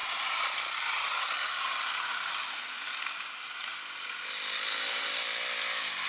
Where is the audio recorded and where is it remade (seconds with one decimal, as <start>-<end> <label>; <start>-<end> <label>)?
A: 0.0-6.1 recorded